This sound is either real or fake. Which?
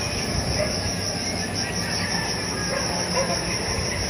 real